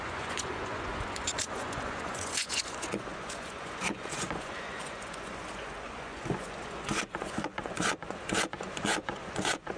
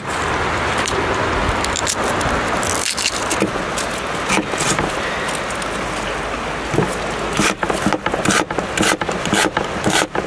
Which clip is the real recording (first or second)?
second